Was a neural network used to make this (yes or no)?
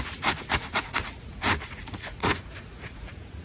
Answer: yes